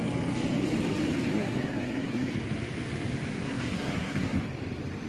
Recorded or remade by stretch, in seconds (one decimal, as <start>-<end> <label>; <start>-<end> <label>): 0.0-1.3 recorded; 1.3-2.3 remade; 2.3-3.3 recorded; 3.3-4.4 remade; 4.4-5.1 recorded